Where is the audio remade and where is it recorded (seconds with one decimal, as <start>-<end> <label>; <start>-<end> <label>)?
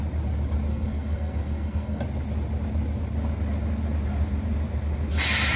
0.0-0.7 recorded; 0.7-2.0 remade; 2.0-5.6 recorded